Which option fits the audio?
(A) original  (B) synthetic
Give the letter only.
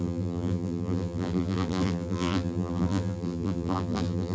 B